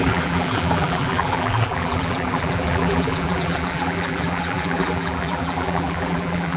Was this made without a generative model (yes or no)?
no